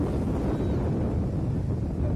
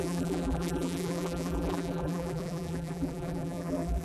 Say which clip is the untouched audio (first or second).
first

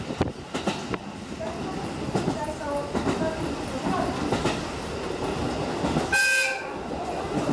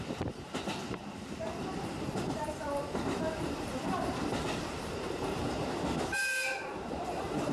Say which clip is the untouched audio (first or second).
first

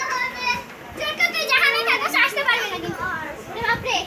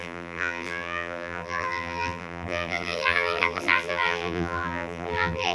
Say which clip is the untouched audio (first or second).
first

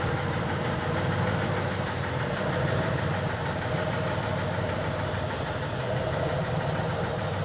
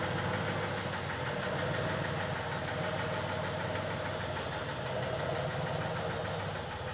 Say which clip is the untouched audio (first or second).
second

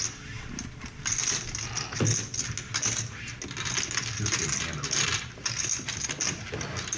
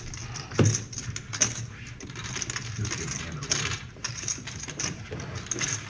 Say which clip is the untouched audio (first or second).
first